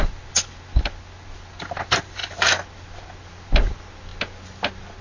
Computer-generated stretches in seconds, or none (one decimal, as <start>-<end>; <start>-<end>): none